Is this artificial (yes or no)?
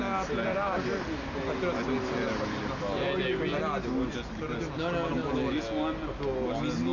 no